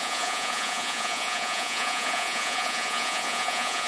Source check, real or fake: fake